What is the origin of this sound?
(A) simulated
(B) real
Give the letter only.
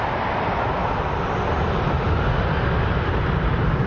B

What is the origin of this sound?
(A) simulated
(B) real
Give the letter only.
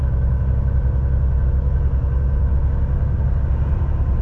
B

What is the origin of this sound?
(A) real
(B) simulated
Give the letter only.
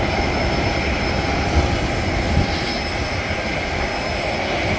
A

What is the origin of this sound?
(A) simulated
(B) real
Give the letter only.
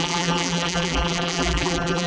A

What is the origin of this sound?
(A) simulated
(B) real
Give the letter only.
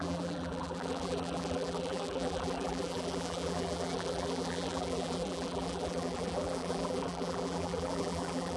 A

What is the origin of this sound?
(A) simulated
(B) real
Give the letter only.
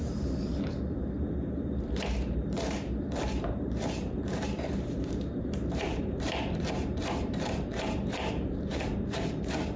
A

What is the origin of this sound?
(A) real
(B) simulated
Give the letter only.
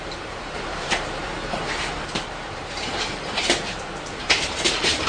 B